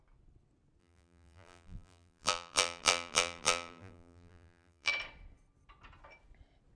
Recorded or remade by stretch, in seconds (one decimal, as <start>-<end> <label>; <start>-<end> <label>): 0.0-0.8 recorded; 0.8-4.9 remade; 4.9-6.8 recorded